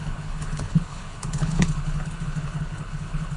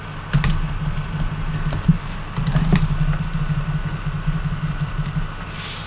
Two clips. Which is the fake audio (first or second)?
first